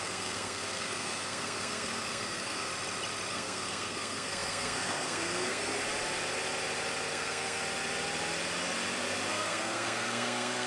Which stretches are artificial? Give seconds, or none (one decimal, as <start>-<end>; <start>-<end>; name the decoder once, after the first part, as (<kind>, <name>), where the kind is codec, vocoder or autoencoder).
0.0-2.7 (codec, SNAC); 3.3-5.7; 7.1-7.6; 9.3-10.7